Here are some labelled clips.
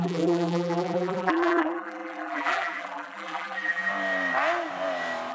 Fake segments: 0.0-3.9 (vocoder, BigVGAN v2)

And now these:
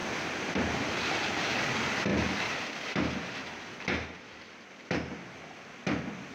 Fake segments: 0.0-2.1 (vocoder, BigVGAN v2); 5.7-6.3

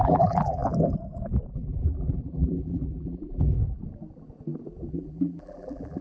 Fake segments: 0.0-0.6 (vocoder, BigVGAN v2); 1.5-3.6; 4.9-6.0

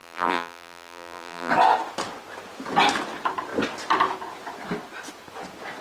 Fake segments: 0.0-1.5 (vocoder, BigVGAN v2)

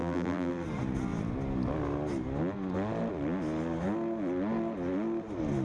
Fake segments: 0.0-0.5 (vocoder, BigVGAN v2)